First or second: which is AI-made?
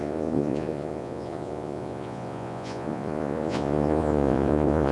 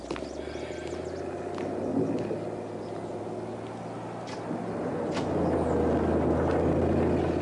first